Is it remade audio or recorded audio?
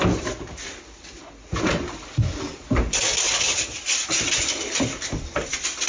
recorded